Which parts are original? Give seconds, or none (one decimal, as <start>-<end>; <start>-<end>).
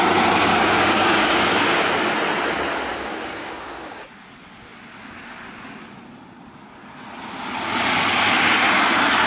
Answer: 0.0-0.5; 1.8-2.9; 4.1-9.3